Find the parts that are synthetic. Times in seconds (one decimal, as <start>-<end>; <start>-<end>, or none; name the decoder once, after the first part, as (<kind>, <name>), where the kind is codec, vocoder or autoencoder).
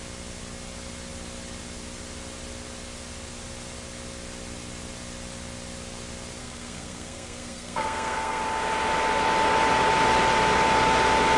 6.4-8.4 (codec, SNAC)